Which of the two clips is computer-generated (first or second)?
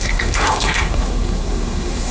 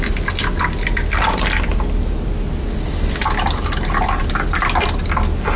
first